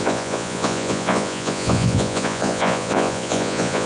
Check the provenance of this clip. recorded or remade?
remade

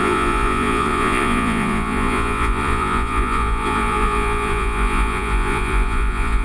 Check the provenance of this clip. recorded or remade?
remade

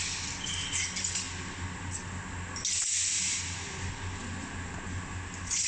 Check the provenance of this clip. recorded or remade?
recorded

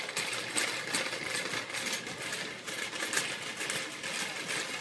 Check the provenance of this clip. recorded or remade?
recorded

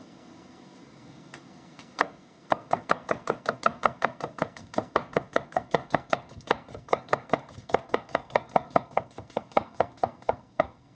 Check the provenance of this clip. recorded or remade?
remade